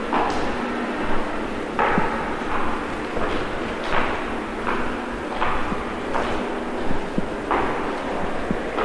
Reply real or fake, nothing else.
real